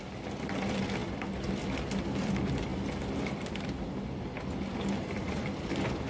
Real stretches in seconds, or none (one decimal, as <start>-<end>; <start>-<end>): 0.0-6.1